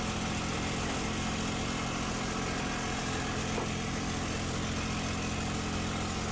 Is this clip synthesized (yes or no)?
no